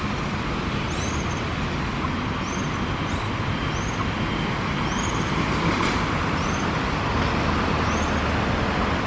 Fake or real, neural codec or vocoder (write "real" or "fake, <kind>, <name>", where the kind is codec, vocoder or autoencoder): real